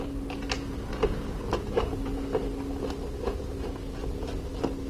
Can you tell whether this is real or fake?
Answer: real